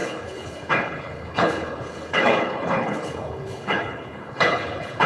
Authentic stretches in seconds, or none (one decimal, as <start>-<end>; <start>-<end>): none